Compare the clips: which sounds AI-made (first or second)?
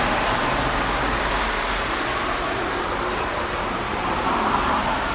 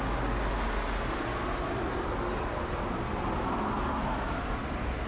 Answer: first